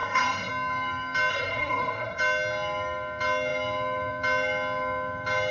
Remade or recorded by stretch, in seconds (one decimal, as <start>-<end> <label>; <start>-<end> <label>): 0.0-0.5 remade; 0.5-1.3 recorded; 1.3-2.2 remade; 2.2-5.5 recorded